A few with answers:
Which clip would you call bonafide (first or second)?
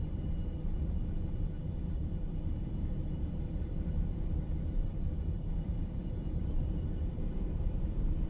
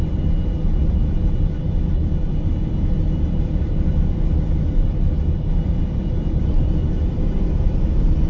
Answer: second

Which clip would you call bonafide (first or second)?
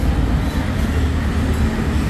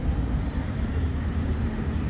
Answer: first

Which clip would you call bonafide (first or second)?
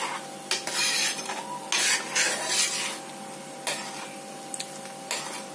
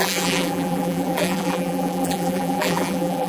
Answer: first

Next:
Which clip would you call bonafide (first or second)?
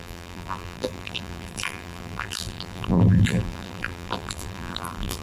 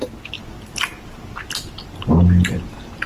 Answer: second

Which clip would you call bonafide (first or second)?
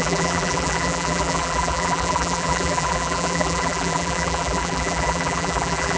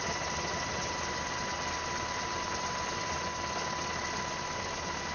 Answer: second